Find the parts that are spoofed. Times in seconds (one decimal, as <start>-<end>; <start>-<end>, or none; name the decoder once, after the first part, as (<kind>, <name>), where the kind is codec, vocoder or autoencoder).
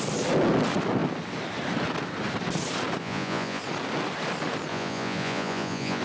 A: 3.0-3.6 (vocoder, Vocos); 4.7-6.0